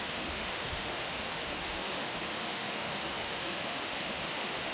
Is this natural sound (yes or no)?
no